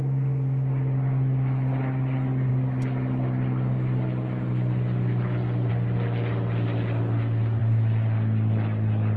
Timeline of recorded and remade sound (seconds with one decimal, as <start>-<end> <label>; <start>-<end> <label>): 0.0-9.2 recorded